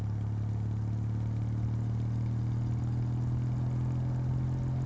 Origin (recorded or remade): recorded